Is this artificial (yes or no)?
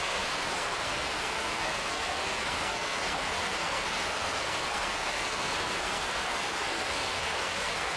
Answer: yes